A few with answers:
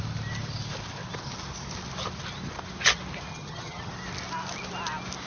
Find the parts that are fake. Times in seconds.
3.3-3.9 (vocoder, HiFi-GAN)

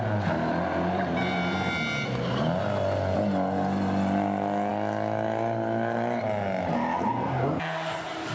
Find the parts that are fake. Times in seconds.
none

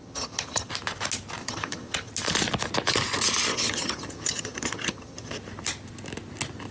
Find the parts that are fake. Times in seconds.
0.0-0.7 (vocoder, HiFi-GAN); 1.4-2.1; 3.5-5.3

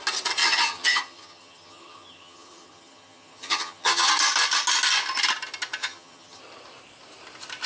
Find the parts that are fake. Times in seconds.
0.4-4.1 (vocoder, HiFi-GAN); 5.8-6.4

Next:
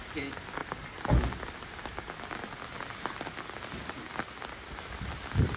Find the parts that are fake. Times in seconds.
none

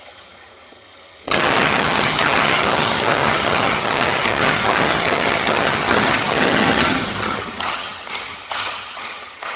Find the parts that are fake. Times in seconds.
0.0-9.6 (vocoder, HiFi-GAN)